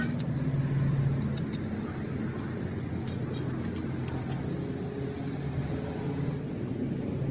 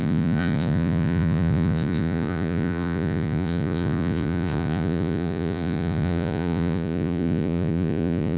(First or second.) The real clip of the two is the first